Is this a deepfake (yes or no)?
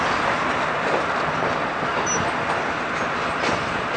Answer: no